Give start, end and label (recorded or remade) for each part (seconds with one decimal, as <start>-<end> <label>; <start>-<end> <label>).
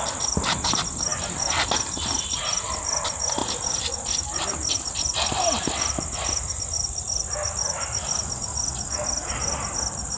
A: 0.0-1.1 remade; 1.1-2.2 recorded; 2.2-10.2 remade